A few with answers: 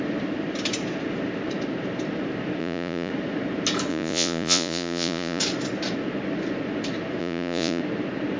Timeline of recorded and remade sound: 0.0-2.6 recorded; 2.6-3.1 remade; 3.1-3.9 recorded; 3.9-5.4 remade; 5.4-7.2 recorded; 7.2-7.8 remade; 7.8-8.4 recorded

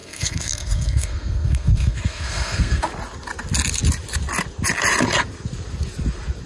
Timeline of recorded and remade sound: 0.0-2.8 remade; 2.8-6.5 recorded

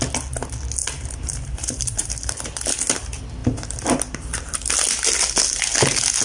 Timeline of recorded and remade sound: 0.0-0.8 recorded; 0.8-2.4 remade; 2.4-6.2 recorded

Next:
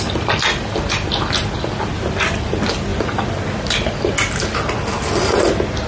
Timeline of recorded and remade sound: 0.0-5.9 recorded